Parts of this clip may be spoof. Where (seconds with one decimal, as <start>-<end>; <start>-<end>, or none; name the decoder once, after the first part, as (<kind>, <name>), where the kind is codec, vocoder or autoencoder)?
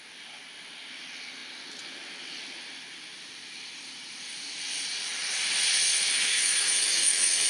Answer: 6.2-7.5 (autoencoder, DAC-VAE)